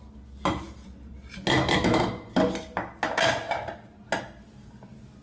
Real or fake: real